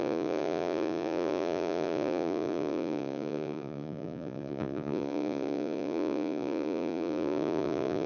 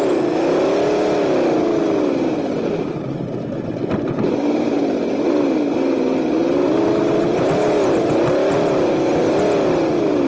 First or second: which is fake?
first